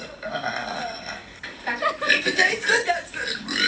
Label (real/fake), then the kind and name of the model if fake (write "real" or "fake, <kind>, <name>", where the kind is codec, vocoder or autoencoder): fake, vocoder, BigVGAN v2